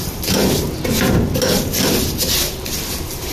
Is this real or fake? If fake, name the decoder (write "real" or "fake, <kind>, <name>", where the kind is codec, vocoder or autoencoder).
real